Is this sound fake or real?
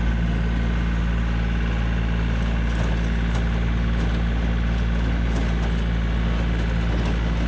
real